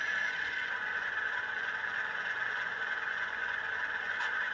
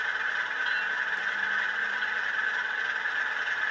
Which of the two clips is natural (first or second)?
second